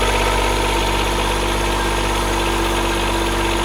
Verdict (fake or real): real